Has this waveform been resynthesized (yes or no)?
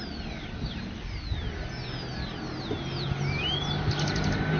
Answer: no